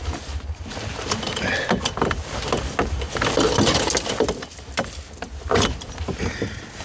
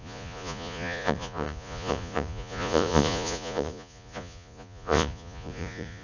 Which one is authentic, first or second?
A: first